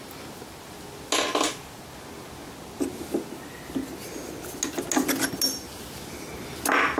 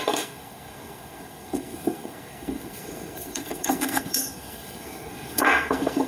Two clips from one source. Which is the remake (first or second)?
second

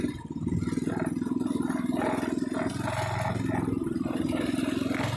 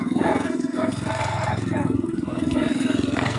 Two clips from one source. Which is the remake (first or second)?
second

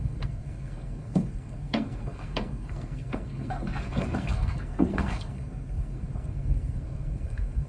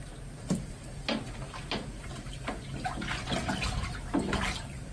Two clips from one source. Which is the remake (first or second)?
first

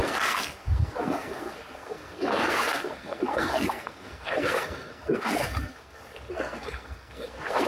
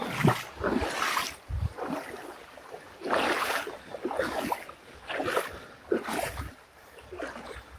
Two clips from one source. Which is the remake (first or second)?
first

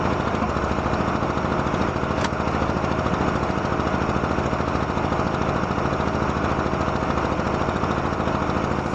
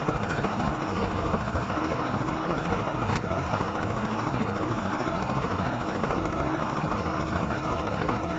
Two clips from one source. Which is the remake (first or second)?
second